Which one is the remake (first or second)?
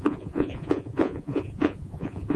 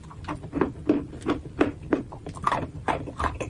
first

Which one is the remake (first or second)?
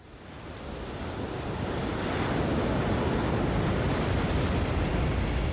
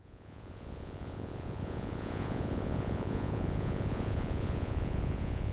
second